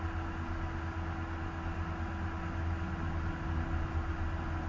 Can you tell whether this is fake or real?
real